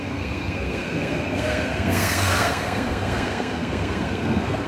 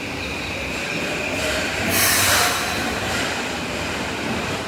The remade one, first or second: first